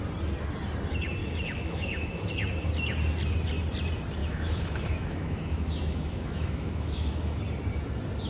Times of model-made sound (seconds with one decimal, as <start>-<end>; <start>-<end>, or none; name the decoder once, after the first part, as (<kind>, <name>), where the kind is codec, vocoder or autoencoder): 1.2-2.3 (autoencoder, DAC-VAE); 4.2-7.4